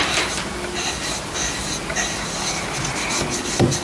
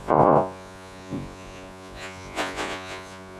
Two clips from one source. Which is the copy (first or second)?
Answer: second